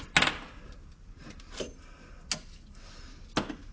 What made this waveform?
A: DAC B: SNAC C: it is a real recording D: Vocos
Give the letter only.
C